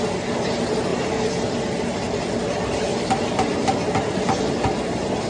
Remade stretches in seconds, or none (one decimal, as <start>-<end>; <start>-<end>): 0.9-3.7